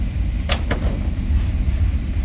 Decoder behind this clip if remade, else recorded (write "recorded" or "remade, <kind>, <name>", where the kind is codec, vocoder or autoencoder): recorded